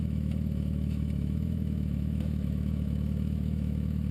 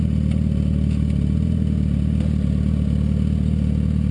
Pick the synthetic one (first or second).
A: first